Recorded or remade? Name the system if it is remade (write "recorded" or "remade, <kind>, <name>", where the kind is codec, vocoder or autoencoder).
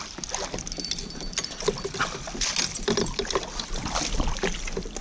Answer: recorded